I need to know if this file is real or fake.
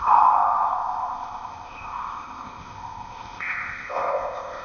fake